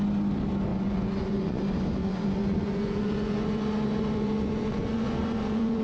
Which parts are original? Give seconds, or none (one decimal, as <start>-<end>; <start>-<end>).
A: 0.0-0.7; 1.6-2.0